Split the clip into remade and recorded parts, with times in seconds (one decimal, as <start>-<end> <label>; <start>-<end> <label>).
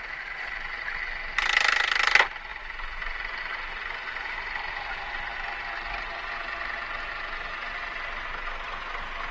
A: 0.0-9.3 recorded